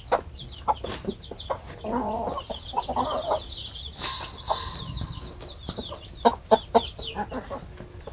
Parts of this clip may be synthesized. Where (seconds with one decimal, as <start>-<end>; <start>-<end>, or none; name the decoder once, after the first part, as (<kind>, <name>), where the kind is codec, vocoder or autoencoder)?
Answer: none